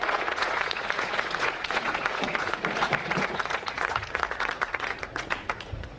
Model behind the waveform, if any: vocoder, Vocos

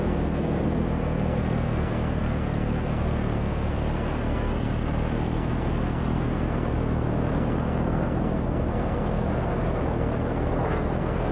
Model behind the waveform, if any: codec, SNAC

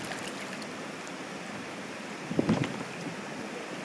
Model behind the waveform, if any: vocoder, BigVGAN v2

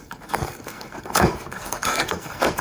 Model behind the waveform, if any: codec, SNAC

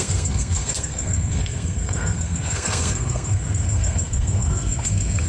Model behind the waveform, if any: codec, SNAC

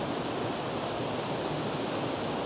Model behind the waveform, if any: none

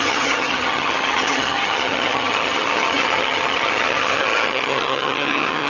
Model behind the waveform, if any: vocoder, HiFi-GAN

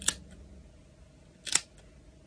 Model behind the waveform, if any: none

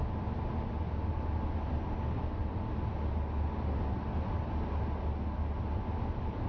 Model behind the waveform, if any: none